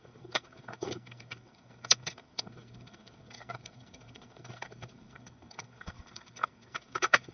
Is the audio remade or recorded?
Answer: remade